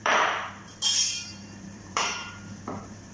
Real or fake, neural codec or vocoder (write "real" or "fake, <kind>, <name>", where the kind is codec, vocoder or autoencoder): fake, vocoder, BigVGAN v2